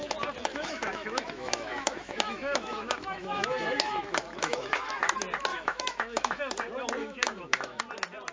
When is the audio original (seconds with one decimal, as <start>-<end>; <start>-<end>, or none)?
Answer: 0.0-0.5; 4.9-5.5; 6.4-7.0; 7.8-8.3